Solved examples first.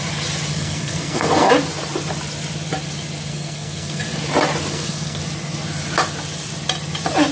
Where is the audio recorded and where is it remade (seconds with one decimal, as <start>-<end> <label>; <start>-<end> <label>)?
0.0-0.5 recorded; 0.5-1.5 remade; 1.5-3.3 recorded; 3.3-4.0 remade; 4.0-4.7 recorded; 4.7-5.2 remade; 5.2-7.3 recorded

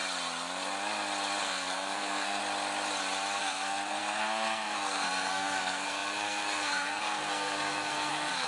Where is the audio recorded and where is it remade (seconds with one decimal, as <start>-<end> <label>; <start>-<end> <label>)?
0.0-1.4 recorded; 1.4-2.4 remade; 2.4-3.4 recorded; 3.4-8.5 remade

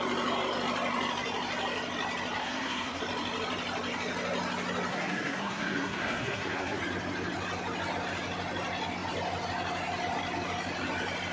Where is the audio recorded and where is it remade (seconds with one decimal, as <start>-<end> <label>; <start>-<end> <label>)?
0.0-2.4 recorded; 2.4-3.0 remade; 3.0-4.9 recorded; 4.9-6.8 remade; 6.8-11.3 recorded